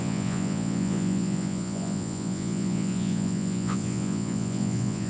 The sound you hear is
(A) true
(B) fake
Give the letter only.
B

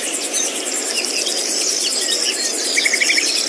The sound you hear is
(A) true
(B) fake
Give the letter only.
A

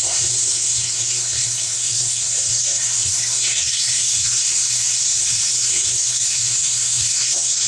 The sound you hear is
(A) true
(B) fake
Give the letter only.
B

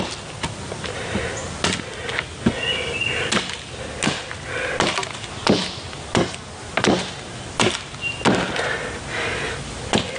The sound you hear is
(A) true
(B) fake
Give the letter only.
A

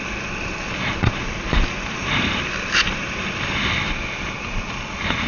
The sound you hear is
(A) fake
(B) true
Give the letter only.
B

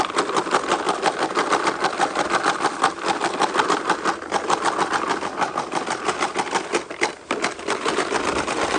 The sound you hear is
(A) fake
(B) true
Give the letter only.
B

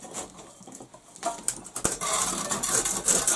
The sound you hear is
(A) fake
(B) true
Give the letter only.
B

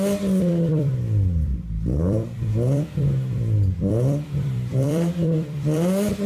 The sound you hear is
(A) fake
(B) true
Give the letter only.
A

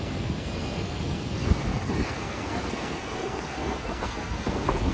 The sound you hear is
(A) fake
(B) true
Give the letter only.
A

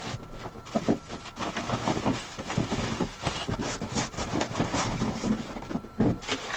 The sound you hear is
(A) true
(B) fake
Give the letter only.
A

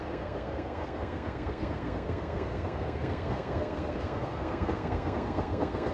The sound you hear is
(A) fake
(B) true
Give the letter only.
A